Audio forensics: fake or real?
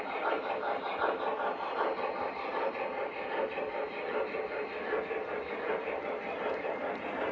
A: real